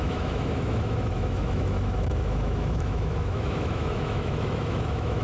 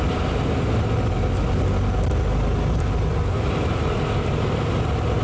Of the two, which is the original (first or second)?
second